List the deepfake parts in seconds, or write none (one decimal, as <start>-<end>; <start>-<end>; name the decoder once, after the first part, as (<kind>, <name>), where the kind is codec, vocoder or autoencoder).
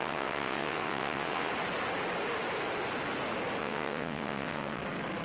0.0-1.5 (vocoder, WaveNeXt); 3.6-4.8